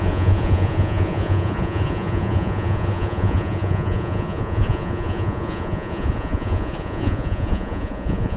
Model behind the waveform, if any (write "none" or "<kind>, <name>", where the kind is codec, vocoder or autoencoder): vocoder, Vocos